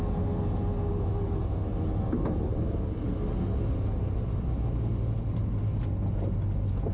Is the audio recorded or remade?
recorded